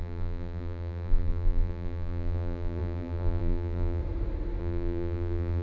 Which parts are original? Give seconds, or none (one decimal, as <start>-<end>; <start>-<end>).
4.0-4.6